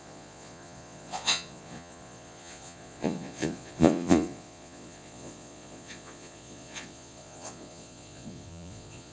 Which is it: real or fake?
fake